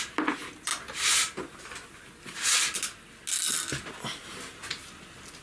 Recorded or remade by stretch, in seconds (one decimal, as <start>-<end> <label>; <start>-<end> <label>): 0.0-0.7 remade; 0.7-3.9 recorded; 3.9-4.7 remade; 4.7-5.4 recorded